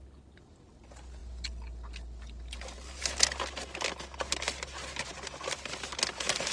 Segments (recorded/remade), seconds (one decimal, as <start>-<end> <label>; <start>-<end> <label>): 0.0-6.5 recorded